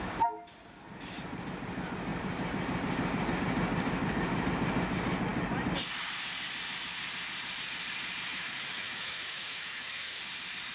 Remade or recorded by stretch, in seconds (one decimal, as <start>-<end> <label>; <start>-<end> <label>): 0.0-8.3 recorded; 8.3-10.2 remade; 10.2-10.7 recorded